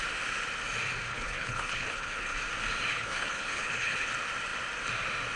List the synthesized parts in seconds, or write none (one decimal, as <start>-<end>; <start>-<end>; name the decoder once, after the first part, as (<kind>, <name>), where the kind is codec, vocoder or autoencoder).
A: 1.1-2.4 (codec, HILCodec); 2.9-4.1